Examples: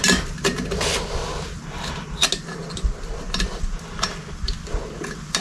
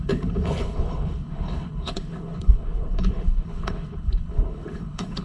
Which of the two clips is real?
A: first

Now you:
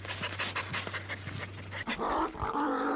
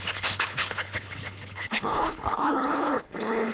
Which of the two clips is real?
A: first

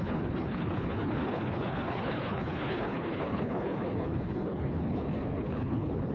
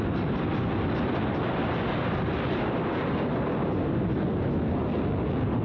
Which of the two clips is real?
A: second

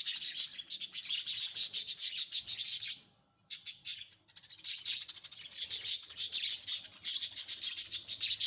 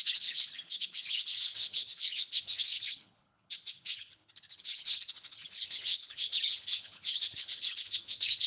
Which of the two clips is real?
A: first